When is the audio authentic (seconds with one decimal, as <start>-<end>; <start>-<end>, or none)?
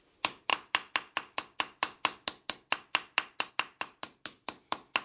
0.0-5.0